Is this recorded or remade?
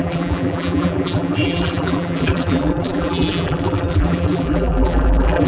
remade